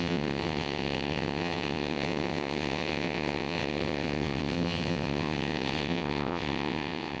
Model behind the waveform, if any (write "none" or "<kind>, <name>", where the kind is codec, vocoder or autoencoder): vocoder, WaveNeXt